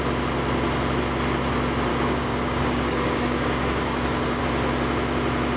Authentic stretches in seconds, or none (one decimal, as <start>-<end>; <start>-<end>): 0.0-1.9; 4.4-5.6